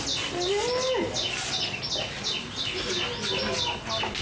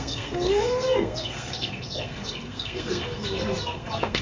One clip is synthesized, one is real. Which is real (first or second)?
first